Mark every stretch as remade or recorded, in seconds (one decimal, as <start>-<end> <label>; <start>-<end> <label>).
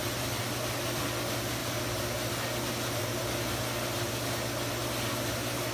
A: 0.0-5.7 recorded